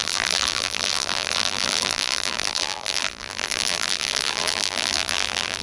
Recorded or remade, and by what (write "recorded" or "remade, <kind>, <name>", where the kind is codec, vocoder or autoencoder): remade, vocoder, BigVGAN v2